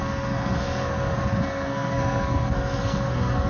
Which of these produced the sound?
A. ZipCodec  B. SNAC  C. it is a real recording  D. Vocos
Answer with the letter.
B